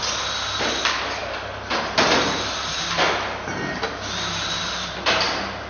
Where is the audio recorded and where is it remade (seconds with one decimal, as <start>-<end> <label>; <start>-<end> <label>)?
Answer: 0.0-5.7 recorded